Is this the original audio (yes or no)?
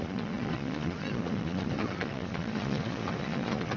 no